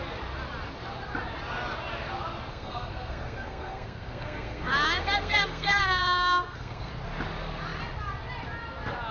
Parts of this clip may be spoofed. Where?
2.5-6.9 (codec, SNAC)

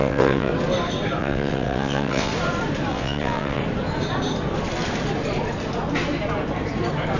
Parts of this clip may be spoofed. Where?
0.0-0.5 (vocoder, WaveNeXt); 1.2-2.3; 2.9-3.6

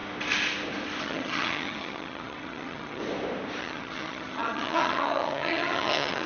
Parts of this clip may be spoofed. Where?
1.0-3.0 (vocoder, HiFi-GAN); 3.6-6.3

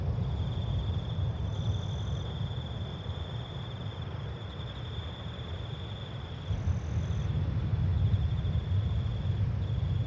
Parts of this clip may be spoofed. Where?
2.9-4.3 (vocoder, BigVGAN v2); 7.9-8.8